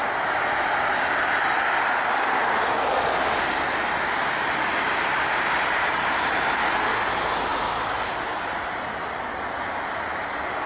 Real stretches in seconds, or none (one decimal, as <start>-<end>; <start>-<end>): 0.0-10.7